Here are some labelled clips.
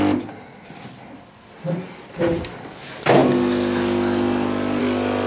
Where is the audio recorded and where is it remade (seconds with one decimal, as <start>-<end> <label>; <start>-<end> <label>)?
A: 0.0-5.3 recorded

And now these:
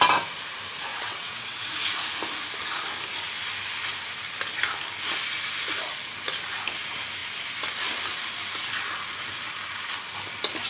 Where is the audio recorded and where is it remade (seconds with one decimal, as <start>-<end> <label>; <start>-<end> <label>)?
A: 0.0-0.9 recorded; 0.9-1.7 remade; 1.7-10.7 recorded

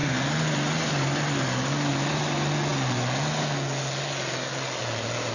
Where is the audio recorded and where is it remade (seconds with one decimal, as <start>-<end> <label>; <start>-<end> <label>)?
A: 0.0-5.3 recorded